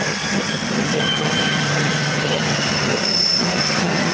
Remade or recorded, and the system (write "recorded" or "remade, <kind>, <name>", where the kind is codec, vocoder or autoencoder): remade, vocoder, HiFi-GAN